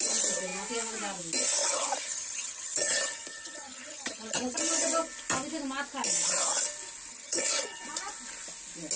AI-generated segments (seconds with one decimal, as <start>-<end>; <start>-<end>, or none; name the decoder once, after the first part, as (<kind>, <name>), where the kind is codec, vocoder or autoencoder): 1.6-4.6 (vocoder, HiFi-GAN); 7.1-7.8